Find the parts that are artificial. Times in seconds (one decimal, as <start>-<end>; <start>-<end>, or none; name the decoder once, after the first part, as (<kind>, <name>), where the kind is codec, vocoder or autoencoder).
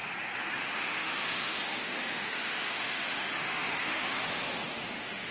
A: 0.6-5.3 (autoencoder, DAC-VAE)